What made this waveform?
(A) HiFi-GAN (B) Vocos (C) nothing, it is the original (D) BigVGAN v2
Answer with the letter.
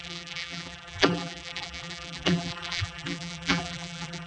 D